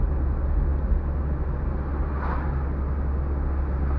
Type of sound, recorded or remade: recorded